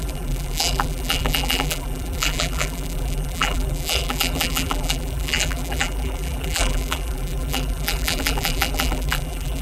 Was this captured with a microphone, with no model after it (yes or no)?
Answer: no